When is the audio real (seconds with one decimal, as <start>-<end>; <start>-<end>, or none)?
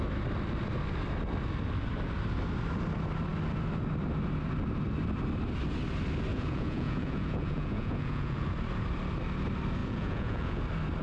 0.0-6.3; 8.5-9.8; 10.6-11.0